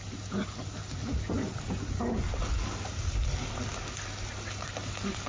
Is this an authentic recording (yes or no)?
yes